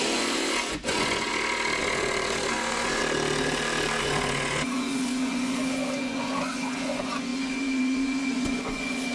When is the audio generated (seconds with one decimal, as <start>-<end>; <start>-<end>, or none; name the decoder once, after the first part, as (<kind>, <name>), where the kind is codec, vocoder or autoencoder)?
0.0-1.3 (vocoder, Vocos); 1.8-3.0; 4.0-9.1